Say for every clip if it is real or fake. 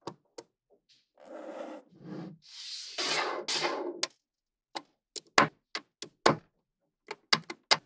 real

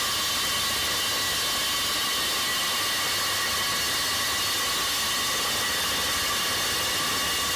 real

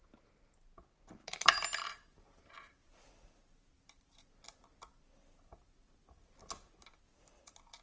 real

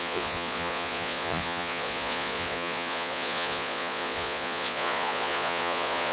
fake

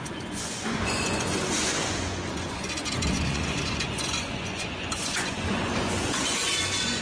fake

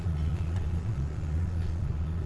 fake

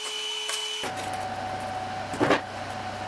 real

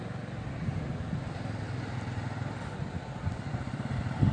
real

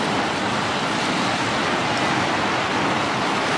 real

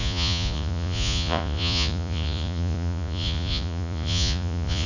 fake